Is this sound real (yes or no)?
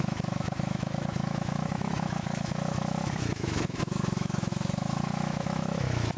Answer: no